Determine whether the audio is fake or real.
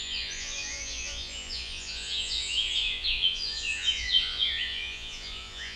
fake